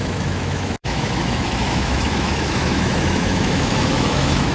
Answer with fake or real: fake